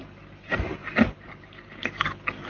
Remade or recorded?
recorded